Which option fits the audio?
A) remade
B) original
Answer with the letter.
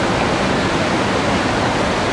B